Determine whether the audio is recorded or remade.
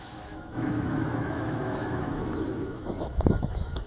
remade